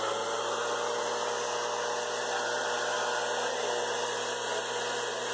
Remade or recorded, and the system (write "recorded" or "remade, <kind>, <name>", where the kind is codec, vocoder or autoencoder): recorded